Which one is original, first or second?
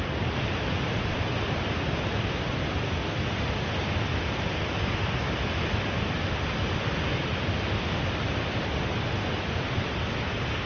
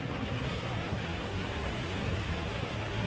first